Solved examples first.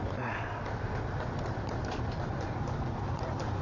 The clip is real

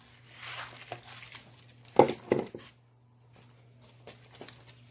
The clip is real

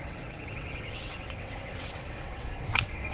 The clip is fake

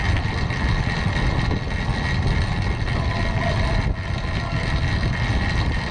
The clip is real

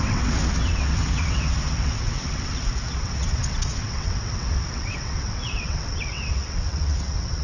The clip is fake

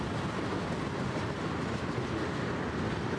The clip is real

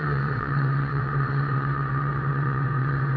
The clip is fake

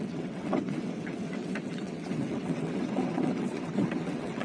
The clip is fake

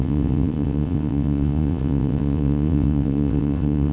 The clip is fake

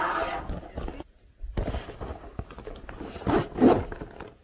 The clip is real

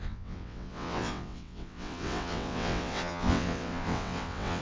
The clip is fake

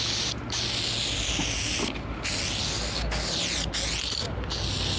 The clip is real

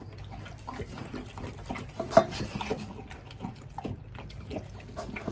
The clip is real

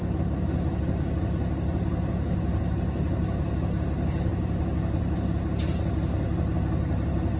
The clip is real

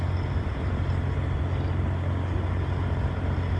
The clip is real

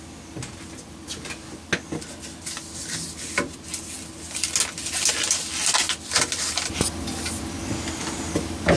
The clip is real